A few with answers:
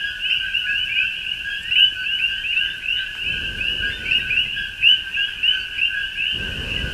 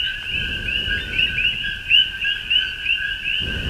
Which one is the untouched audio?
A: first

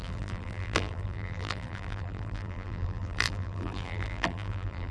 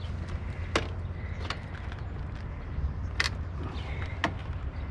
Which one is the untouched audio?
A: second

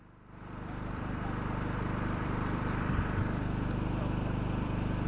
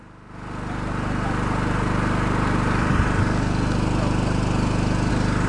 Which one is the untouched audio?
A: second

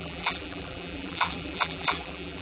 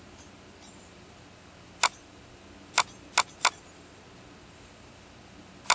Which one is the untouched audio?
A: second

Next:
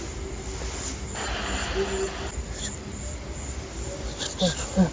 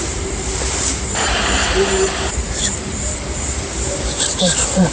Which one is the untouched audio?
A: first